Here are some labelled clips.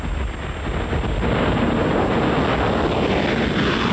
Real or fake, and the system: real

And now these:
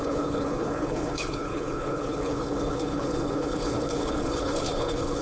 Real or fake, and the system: fake, codec, HILCodec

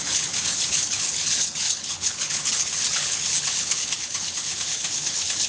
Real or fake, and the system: fake, codec, HILCodec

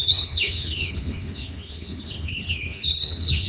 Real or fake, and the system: fake, codec, HILCodec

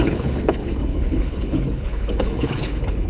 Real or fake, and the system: fake, codec, HILCodec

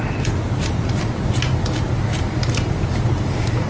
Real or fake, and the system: real